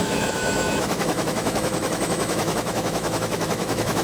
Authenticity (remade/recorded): remade